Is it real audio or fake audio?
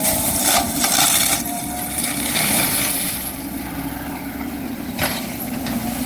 fake